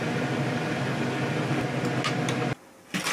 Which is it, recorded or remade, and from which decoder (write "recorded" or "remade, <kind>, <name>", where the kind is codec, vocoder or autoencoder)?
recorded